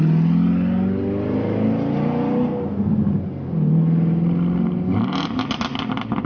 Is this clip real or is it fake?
real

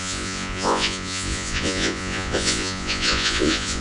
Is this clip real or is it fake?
fake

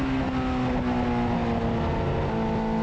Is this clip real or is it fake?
real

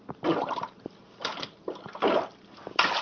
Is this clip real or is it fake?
real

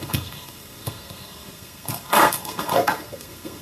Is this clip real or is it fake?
fake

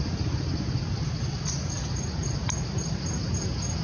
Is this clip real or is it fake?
real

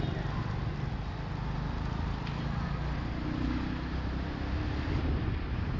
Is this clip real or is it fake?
real